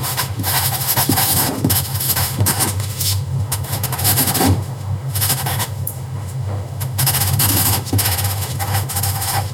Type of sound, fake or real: fake